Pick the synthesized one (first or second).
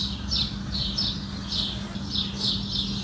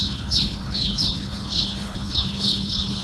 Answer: second